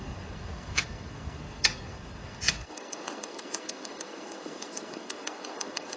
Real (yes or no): no